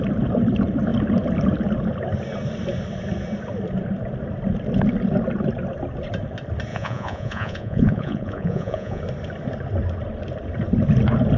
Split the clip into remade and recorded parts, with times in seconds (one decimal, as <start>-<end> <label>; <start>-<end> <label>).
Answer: 0.0-6.7 recorded; 6.7-9.0 remade; 9.0-11.4 recorded